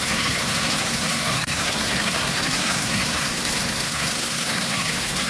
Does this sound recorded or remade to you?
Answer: remade